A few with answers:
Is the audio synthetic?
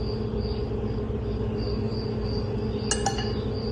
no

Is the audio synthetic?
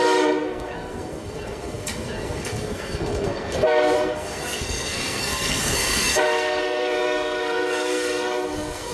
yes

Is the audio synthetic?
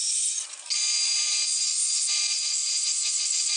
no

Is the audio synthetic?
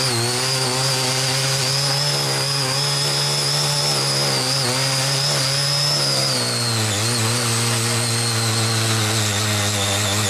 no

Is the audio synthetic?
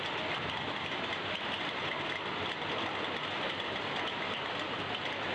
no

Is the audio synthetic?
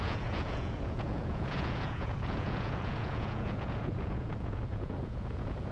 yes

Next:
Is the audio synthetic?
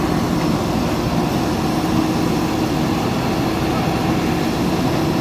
no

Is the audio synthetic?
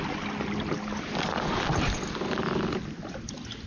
no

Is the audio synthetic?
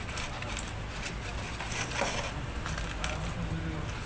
no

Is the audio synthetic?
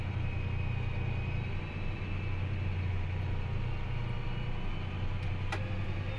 no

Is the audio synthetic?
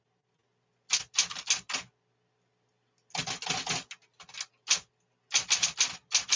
no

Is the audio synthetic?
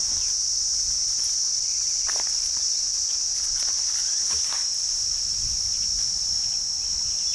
no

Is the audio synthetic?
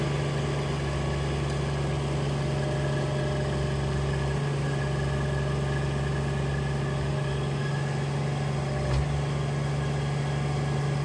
no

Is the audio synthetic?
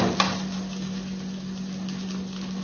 no